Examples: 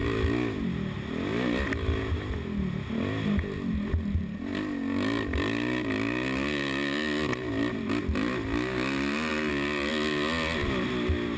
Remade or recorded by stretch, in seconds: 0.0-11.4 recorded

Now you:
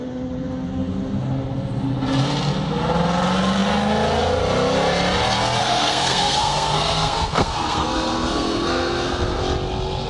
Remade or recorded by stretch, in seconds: 0.0-5.6 recorded; 5.6-9.4 remade; 9.4-10.1 recorded

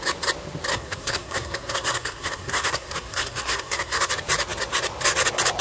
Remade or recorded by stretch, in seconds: 0.0-0.7 recorded; 0.7-4.1 remade; 4.1-5.6 recorded

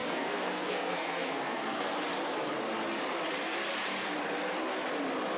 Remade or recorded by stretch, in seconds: 0.0-1.9 remade; 1.9-5.4 recorded

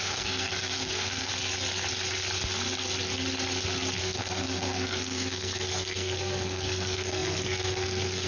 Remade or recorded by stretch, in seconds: 0.0-1.3 remade; 1.3-4.0 recorded; 4.0-8.3 remade